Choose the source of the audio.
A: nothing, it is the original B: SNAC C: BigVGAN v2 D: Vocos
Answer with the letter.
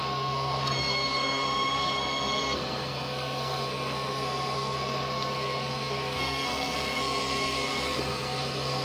B